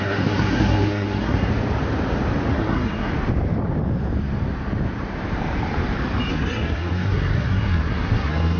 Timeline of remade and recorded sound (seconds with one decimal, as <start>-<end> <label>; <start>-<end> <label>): 0.0-1.5 remade; 1.5-2.5 recorded; 2.5-3.1 remade; 3.1-6.3 recorded; 6.3-8.6 remade